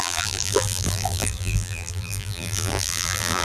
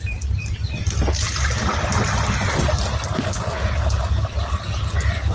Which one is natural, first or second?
second